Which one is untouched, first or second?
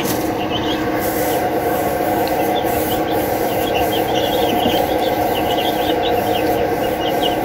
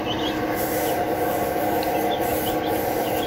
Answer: second